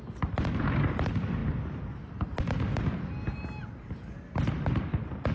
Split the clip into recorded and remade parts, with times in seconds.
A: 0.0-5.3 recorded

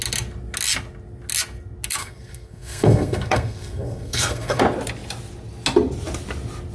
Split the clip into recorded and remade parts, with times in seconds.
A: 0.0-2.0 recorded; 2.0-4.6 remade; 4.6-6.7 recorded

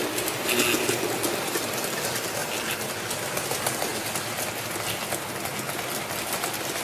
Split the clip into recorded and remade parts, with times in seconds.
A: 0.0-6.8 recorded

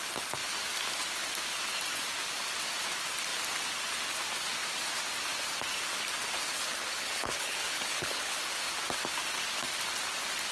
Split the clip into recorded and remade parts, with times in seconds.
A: 0.0-6.5 recorded; 6.5-8.6 remade; 8.6-10.5 recorded